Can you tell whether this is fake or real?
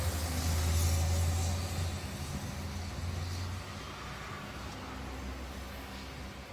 real